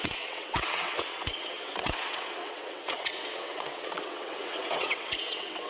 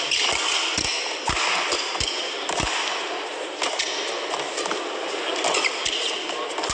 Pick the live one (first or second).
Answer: second